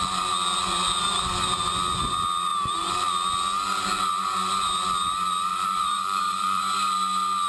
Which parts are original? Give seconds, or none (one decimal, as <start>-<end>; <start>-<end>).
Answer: 0.0-5.5; 6.6-7.5